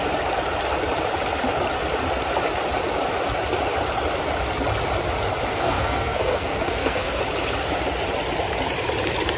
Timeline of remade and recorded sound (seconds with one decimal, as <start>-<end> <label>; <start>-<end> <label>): 0.0-5.5 recorded; 5.5-7.2 remade; 7.2-9.4 recorded